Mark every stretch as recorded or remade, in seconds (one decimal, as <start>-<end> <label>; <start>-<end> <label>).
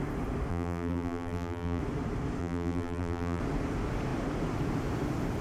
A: 0.0-0.5 recorded; 0.5-1.8 remade; 1.8-2.4 recorded; 2.4-3.4 remade; 3.4-5.4 recorded